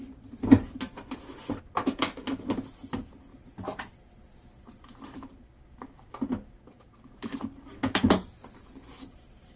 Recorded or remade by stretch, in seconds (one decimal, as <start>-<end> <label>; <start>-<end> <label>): 0.0-9.6 recorded